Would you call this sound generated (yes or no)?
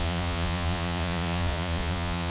yes